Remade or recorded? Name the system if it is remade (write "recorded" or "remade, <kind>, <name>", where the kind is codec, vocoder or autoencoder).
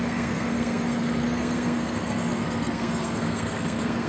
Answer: remade, codec, SNAC